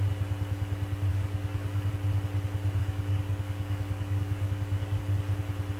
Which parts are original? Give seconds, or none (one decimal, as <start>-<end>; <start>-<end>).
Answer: 0.0-1.1; 1.9-2.8; 5.0-5.8